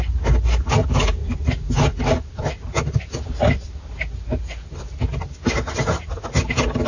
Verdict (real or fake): real